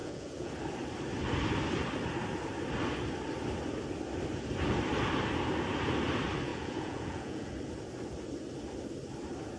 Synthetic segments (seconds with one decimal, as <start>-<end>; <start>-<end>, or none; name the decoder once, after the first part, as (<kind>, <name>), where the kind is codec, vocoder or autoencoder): 0.0-0.5 (vocoder, Vocos); 6.5-7.5